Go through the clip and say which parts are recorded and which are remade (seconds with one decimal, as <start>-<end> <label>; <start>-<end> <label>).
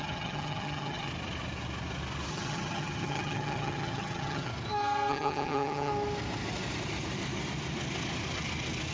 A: 0.0-1.1 remade; 1.1-2.3 recorded; 2.3-4.5 remade; 4.5-5.1 recorded; 5.1-5.9 remade; 5.9-8.9 recorded